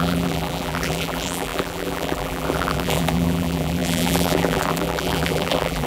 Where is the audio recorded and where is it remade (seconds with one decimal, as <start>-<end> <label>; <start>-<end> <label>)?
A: 0.0-5.9 remade